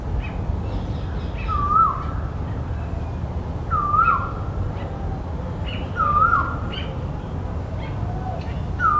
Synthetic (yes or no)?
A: no